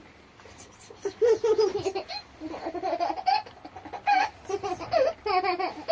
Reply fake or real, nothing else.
real